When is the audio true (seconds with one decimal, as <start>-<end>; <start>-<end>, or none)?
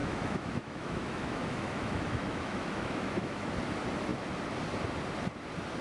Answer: 3.5-5.8